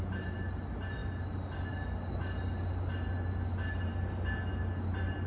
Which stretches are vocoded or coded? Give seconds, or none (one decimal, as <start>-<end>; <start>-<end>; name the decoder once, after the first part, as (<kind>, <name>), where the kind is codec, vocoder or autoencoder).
none